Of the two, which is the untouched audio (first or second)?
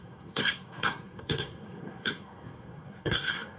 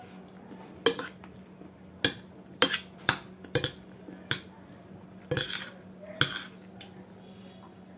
second